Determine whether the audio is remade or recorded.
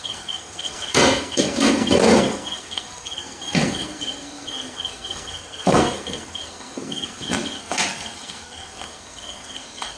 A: remade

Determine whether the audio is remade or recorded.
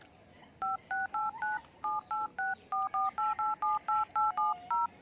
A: recorded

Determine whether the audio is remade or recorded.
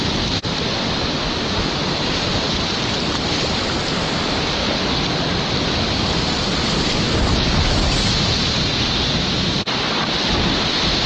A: recorded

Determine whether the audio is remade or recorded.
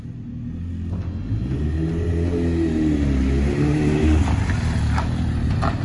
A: recorded